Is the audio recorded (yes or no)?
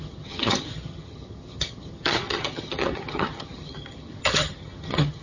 no